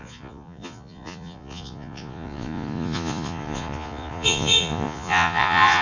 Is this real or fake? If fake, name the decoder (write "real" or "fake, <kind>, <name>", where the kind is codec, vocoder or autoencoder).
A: fake, vocoder, Vocos